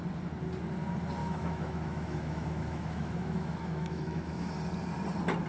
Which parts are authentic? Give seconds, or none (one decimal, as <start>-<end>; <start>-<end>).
0.0-1.2; 4.5-5.5